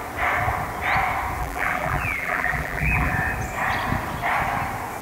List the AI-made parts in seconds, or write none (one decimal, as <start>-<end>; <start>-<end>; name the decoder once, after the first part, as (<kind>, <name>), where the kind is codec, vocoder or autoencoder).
1.4-3.1 (vocoder, BigVGAN v2)